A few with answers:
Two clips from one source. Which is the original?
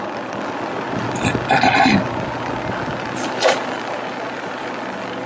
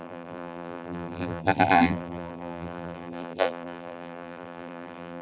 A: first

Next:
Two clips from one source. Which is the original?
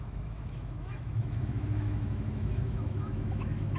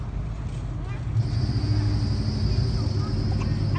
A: second